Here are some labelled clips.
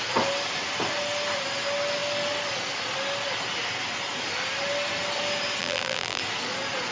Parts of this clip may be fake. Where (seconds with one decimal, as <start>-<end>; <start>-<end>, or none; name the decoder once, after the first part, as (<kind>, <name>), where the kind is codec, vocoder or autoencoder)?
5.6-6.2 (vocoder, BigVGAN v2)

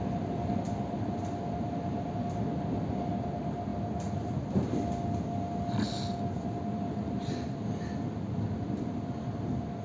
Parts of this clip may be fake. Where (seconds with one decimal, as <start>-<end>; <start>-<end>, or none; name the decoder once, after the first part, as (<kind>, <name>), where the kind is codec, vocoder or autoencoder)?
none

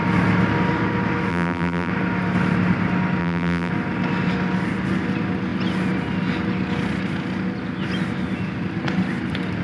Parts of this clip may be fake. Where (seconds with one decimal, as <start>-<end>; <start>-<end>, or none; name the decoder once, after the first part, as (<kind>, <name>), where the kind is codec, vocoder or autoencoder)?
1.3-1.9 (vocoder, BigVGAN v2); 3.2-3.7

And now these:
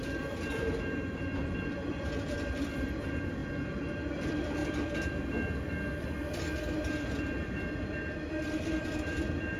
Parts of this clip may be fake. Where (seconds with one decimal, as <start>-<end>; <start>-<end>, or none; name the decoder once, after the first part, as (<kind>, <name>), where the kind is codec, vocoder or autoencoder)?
0.0-3.4 (vocoder, BigVGAN v2); 4.1-4.6; 8.6-9.6

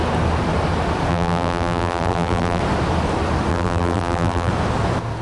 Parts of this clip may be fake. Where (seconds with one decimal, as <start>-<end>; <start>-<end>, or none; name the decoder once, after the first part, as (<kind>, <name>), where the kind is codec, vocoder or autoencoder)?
1.1-2.6 (vocoder, BigVGAN v2); 3.5-4.5

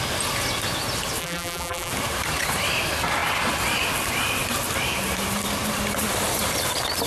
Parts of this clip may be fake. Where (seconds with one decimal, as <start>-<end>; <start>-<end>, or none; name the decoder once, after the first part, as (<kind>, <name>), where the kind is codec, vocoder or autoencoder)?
1.2-1.9 (vocoder, BigVGAN v2)

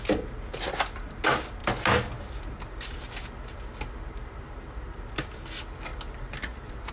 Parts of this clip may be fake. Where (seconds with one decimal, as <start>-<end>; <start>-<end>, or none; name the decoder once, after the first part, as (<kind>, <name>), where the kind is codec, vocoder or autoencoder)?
5.9-6.9 (vocoder, BigVGAN v2)

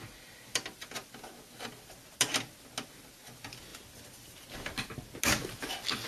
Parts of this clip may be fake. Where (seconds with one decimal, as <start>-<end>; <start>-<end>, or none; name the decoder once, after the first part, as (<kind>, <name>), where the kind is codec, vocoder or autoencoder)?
none